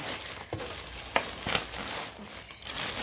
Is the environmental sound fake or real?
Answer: real